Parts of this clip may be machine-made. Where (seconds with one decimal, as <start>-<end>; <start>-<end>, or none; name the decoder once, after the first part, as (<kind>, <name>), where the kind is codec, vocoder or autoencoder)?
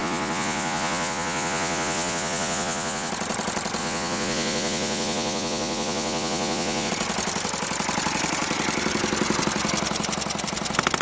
0.0-3.1 (vocoder, Vocos); 3.8-6.9